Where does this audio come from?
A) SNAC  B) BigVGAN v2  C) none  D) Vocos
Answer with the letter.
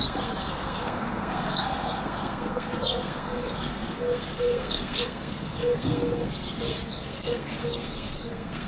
A